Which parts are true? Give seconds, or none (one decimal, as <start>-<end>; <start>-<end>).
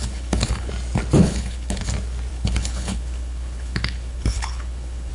0.7-1.2; 1.8-2.3